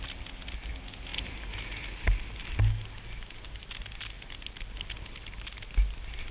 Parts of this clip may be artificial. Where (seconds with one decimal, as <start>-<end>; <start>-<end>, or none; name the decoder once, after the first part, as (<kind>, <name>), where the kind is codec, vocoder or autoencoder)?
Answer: none